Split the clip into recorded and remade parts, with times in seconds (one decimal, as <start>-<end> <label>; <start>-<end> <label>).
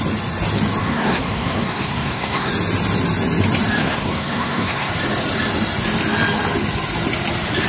0.0-0.8 recorded; 0.8-2.5 remade; 2.5-3.8 recorded; 3.8-4.9 remade; 4.9-7.7 recorded